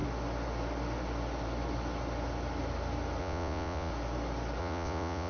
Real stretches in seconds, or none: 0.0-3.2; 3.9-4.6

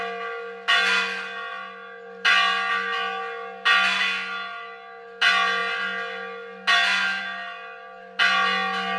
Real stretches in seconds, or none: 0.0-9.0

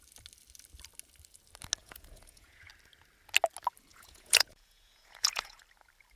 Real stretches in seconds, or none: 0.0-1.8; 2.7-3.9; 5.6-6.2

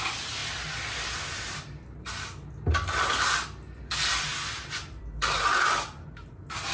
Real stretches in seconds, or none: 0.0-6.7